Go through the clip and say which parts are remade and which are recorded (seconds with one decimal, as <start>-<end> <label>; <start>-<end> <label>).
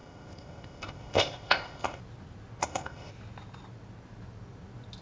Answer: 0.0-2.0 remade; 2.0-2.6 recorded; 2.6-3.1 remade; 3.1-5.0 recorded